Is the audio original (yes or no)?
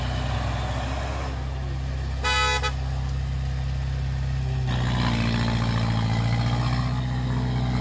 yes